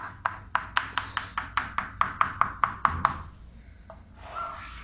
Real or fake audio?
real